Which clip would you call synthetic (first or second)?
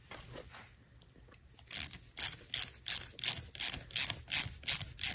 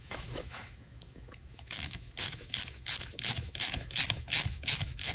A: second